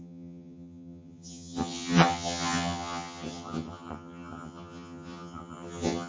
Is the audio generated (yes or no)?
yes